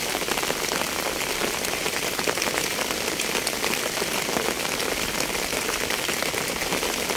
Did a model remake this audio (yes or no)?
no